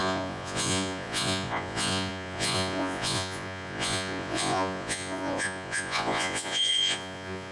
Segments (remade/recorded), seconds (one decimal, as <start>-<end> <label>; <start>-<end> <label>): 0.0-7.5 remade